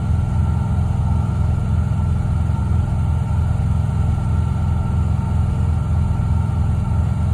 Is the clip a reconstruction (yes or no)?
no